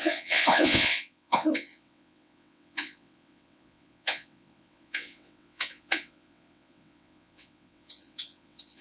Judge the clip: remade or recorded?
remade